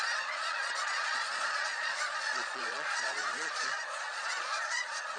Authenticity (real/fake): fake